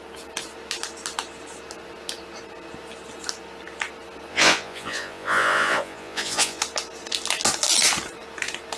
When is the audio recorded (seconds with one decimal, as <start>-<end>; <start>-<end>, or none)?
0.0-4.3; 6.6-8.8